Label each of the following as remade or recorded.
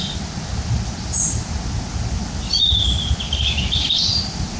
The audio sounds recorded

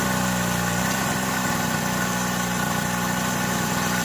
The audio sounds remade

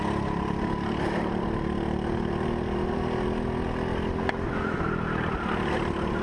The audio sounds recorded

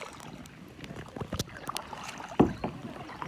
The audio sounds recorded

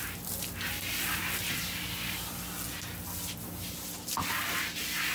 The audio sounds recorded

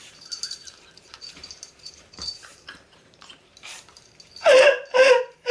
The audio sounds remade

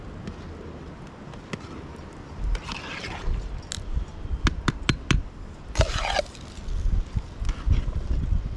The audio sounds recorded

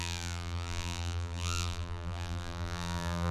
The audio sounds remade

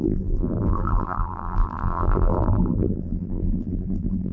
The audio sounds remade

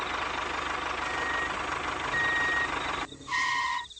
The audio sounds recorded